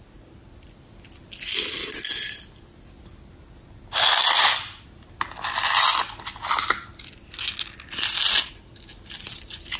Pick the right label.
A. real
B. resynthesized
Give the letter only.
A